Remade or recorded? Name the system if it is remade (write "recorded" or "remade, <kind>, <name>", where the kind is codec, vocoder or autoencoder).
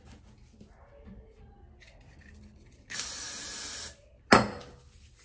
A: recorded